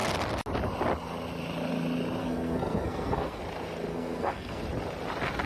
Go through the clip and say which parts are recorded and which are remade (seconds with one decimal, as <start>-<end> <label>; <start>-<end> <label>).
0.0-2.2 recorded; 2.2-3.4 remade; 3.4-3.9 recorded; 3.9-4.6 remade; 4.6-5.5 recorded